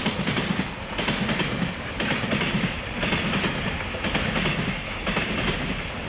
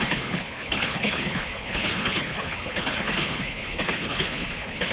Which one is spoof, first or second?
second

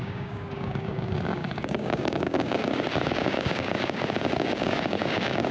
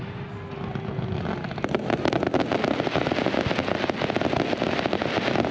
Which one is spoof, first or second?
first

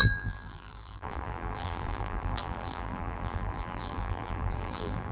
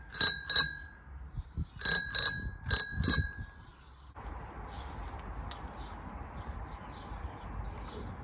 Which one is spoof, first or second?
first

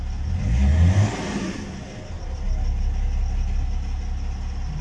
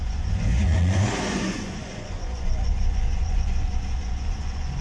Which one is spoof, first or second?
second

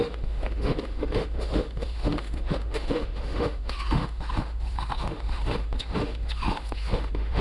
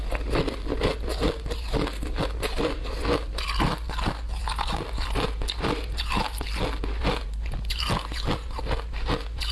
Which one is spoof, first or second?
first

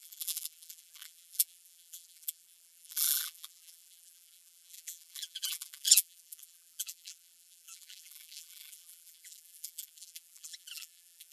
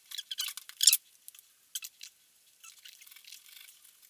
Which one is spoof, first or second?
first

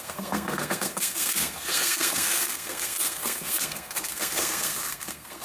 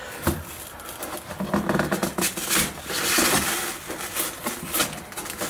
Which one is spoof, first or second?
first